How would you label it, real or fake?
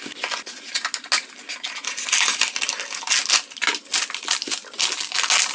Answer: real